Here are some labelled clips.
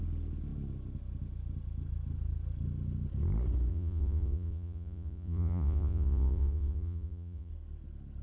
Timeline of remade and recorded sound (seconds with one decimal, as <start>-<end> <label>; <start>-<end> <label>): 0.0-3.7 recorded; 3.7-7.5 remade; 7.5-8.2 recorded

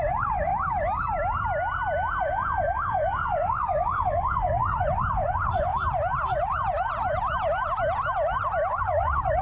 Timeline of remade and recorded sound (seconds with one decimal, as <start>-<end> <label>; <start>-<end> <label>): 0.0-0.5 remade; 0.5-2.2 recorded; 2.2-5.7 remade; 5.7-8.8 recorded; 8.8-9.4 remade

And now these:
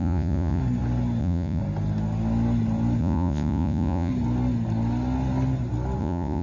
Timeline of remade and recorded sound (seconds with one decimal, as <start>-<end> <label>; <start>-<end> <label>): 0.0-0.6 remade; 0.6-1.2 recorded; 1.2-1.6 remade; 1.6-3.0 recorded; 3.0-4.1 remade; 4.1-6.0 recorded; 6.0-6.4 remade